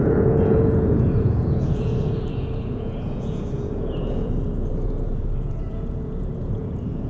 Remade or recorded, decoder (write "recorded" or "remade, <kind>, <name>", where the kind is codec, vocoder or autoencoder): remade, vocoder, Vocos